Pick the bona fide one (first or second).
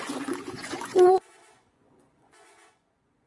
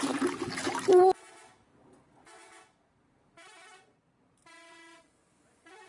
second